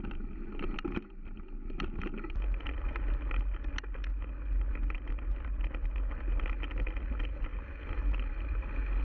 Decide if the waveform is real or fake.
real